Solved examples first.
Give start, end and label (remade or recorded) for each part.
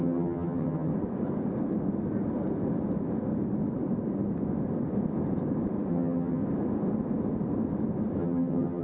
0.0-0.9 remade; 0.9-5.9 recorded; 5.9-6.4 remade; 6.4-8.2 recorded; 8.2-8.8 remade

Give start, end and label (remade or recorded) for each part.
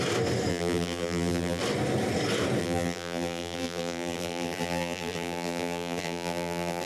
0.0-0.5 recorded; 0.5-1.6 remade; 1.6-2.6 recorded; 2.6-6.9 remade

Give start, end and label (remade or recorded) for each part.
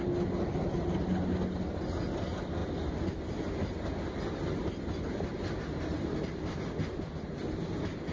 0.0-8.1 recorded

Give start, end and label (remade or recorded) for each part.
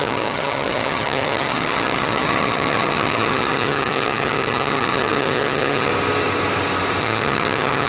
0.0-5.9 remade; 5.9-7.0 recorded; 7.0-7.9 remade